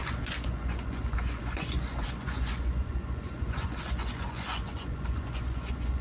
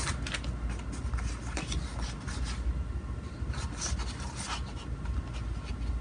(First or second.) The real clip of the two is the second